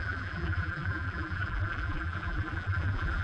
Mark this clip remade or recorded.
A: remade